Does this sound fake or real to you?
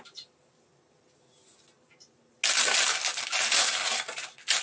real